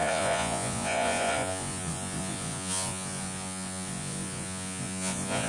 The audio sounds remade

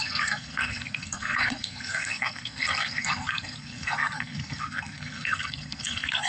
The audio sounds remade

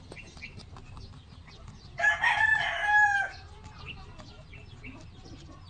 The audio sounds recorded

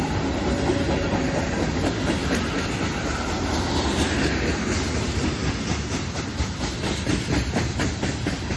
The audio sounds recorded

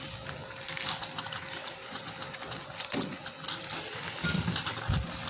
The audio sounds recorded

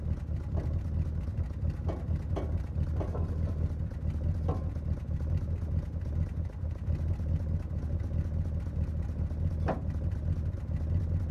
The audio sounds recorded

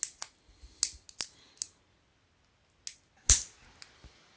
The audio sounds recorded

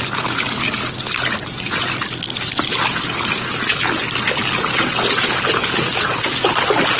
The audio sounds recorded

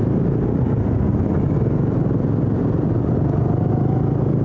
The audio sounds recorded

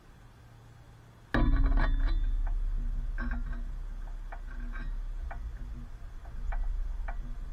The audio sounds recorded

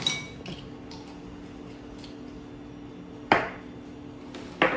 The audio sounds recorded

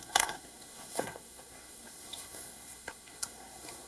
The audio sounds remade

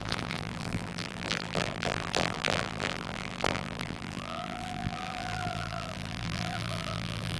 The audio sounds remade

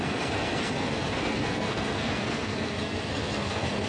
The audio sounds remade